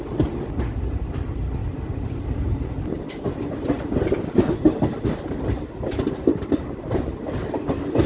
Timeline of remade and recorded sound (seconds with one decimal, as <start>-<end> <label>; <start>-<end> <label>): 0.0-8.1 recorded